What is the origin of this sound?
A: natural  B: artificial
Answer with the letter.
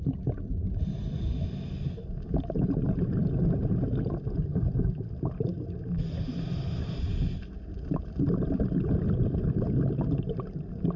A